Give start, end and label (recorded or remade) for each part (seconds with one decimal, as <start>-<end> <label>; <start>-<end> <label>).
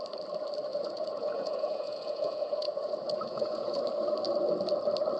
0.0-0.7 recorded; 0.7-3.8 remade; 3.8-5.2 recorded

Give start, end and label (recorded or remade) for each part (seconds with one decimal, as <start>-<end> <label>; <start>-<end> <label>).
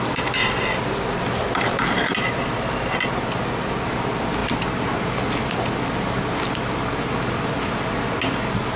0.0-8.8 recorded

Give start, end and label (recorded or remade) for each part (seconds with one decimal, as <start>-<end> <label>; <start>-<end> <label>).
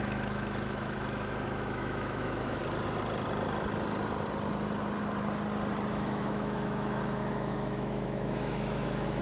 0.0-2.6 remade; 2.6-5.9 recorded; 5.9-9.2 remade